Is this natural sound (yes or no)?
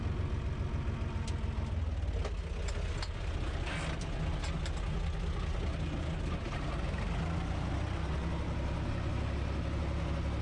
yes